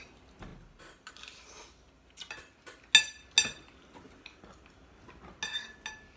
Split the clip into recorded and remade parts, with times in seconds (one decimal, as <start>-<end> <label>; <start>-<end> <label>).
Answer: 0.0-6.2 recorded